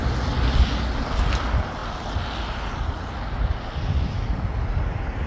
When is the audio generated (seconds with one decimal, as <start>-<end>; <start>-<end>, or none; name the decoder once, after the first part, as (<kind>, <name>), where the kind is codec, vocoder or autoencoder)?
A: none